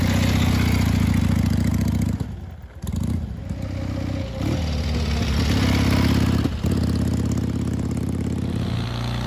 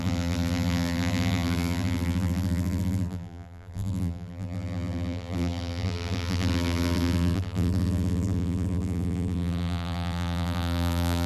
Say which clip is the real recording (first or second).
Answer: first